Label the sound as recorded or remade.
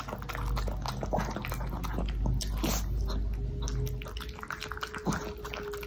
recorded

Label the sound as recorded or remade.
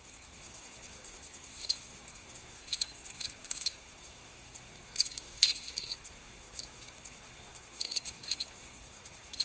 remade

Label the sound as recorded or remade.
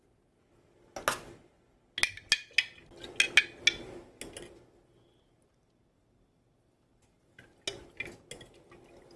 recorded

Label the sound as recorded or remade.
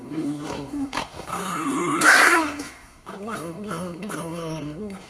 remade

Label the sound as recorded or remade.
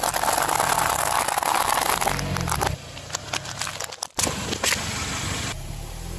recorded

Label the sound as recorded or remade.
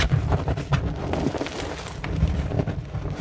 remade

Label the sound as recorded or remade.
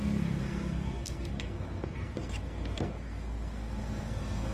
remade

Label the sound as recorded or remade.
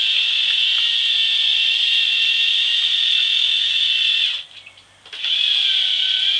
recorded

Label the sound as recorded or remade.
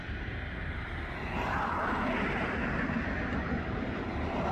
remade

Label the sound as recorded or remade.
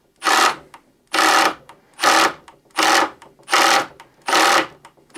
recorded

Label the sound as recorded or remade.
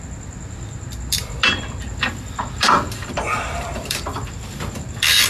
remade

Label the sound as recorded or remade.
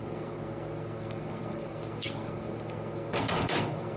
remade